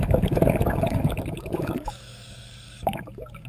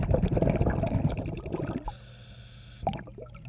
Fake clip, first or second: first